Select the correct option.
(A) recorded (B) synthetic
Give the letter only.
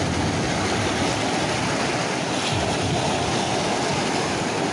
A